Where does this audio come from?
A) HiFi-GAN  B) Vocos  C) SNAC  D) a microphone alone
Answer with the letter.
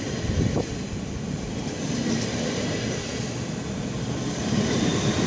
D